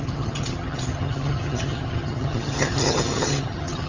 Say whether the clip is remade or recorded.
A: remade